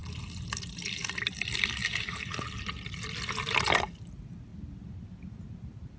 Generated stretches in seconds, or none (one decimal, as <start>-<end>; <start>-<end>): none